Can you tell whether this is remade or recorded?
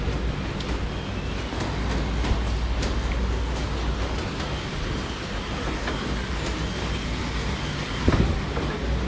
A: recorded